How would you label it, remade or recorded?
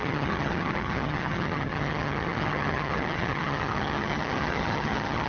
remade